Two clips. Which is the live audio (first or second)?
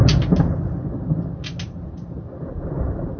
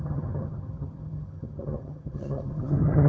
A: first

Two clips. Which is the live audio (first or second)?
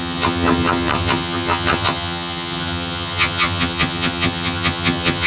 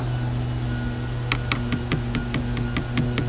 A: second